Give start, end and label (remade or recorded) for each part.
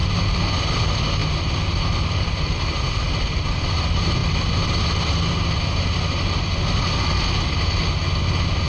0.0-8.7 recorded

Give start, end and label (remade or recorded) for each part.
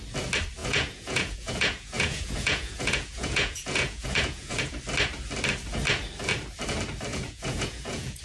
0.0-0.6 recorded; 0.6-4.7 remade; 4.7-7.1 recorded; 7.1-8.2 remade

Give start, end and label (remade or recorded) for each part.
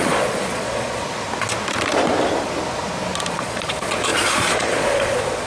0.0-1.0 remade; 1.0-3.3 recorded; 3.3-5.5 remade